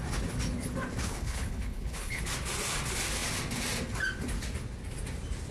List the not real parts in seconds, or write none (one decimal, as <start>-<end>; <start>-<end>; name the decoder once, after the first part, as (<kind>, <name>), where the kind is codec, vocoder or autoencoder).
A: 1.0-2.2 (codec, HILCodec)